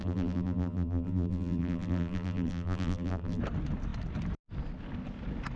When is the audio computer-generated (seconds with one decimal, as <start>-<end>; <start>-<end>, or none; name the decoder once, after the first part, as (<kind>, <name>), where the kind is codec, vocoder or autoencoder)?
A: 0.0-3.4 (vocoder, BigVGAN v2)